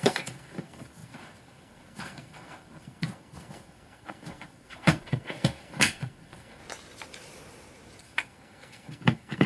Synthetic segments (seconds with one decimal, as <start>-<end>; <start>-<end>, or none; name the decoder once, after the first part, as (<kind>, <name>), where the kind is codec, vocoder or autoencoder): 0.0-6.6 (codec, SNAC); 8.0-9.5